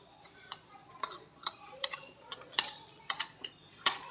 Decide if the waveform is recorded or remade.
remade